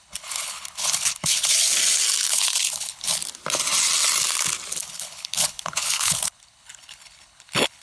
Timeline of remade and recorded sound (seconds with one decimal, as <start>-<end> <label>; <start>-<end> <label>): 0.0-1.7 remade; 1.7-2.3 recorded; 2.3-3.2 remade; 3.2-4.8 recorded; 4.8-7.8 remade